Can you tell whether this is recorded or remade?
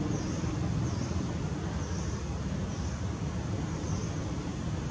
recorded